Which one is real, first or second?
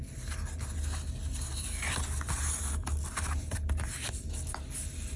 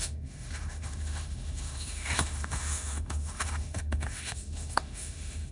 first